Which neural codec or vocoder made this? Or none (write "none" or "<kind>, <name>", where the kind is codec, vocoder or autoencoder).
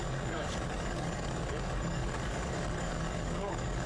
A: codec, DAC